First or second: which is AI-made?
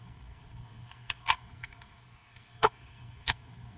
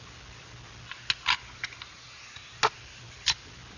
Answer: first